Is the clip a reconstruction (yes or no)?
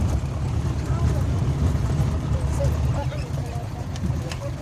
yes